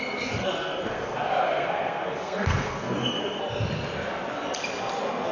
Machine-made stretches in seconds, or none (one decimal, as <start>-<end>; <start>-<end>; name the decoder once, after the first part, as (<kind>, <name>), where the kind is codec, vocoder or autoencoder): 0.4-3.4 (codec, SNAC)